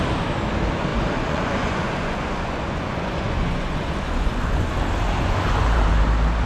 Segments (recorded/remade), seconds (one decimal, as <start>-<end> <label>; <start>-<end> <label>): 0.0-0.9 recorded; 0.9-4.7 remade; 4.7-5.2 recorded; 5.2-5.8 remade; 5.8-6.5 recorded

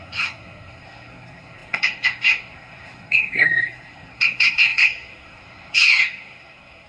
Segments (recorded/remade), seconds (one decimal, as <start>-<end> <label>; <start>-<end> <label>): 0.0-6.9 remade